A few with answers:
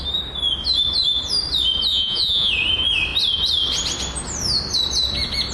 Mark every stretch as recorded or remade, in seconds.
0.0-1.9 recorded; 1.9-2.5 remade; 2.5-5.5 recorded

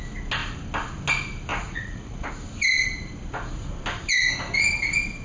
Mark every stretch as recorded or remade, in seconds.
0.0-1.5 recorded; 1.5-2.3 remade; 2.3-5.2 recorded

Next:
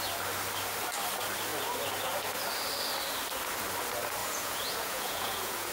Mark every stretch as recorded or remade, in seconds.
0.0-4.2 recorded; 4.2-5.7 remade